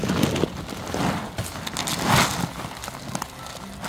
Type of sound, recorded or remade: recorded